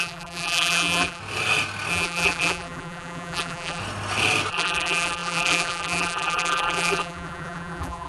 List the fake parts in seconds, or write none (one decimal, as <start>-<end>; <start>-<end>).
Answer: 0.0-1.2; 1.9-3.8; 4.5-8.1